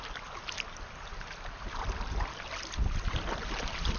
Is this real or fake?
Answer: real